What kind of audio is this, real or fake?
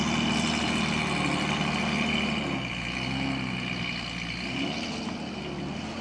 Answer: real